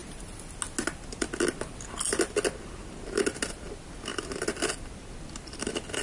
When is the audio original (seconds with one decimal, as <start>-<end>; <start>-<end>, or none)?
0.0-6.0